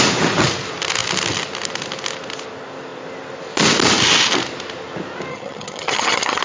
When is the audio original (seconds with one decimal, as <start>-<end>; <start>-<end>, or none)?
0.0-5.3